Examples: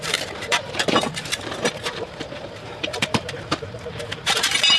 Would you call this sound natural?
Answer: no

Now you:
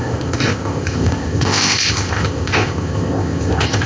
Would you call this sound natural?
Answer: no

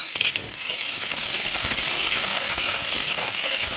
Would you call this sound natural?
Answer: no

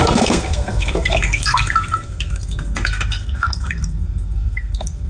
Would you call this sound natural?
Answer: no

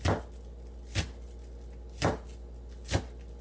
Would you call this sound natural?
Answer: yes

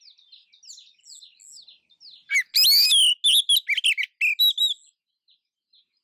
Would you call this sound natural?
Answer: yes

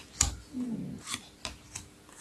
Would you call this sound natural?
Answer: yes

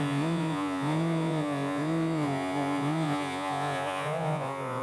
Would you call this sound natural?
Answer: no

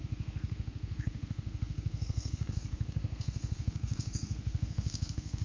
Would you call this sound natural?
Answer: no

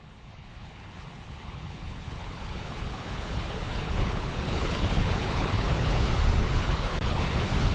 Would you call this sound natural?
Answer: no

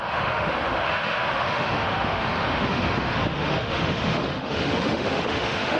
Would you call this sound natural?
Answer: no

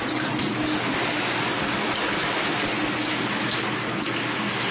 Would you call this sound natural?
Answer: yes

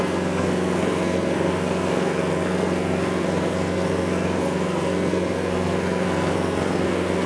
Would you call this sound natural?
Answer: no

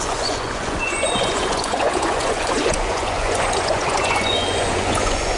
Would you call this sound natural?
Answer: no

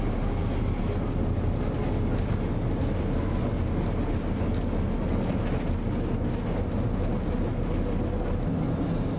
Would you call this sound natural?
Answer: yes